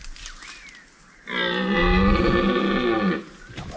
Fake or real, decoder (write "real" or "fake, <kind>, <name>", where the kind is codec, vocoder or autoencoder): real